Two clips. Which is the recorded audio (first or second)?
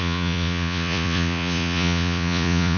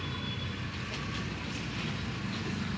second